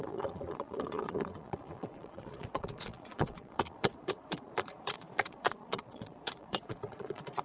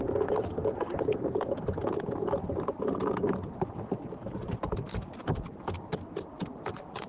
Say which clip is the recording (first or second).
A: second